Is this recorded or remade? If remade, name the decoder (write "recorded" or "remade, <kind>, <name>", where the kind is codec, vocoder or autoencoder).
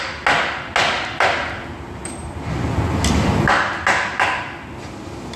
recorded